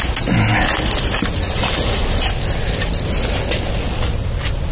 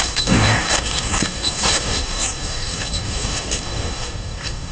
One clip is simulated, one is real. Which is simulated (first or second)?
second